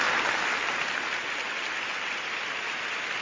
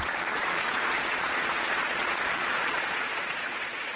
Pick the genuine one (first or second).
first